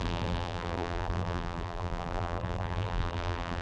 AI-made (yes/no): yes